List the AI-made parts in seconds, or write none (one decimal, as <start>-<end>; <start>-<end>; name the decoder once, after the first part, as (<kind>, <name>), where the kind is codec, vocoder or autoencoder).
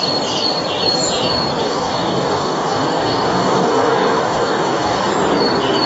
1.6-5.1 (codec, DAC)